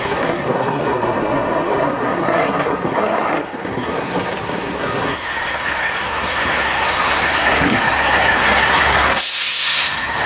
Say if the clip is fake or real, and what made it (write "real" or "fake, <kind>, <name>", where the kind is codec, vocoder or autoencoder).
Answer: fake, codec, SNAC